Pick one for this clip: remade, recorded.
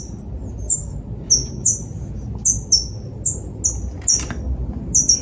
recorded